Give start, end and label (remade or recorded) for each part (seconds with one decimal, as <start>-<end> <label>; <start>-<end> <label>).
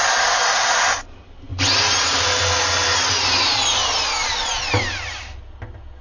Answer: 0.0-6.0 recorded